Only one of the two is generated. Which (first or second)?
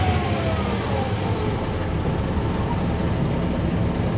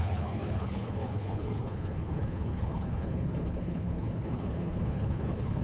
second